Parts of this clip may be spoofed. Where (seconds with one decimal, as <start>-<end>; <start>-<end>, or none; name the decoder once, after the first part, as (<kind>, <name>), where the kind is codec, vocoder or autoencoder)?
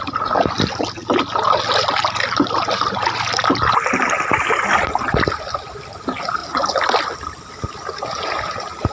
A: none